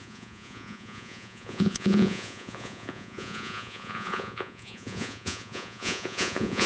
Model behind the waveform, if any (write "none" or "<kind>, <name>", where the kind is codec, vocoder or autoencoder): vocoder, Vocos